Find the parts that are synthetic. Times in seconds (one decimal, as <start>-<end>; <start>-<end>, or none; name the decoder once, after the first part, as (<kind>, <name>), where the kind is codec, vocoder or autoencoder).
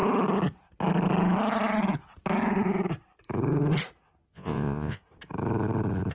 4.3-5.0 (vocoder, Vocos)